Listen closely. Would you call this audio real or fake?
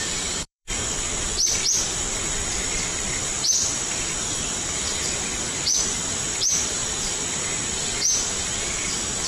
fake